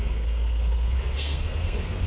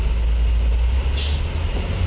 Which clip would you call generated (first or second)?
first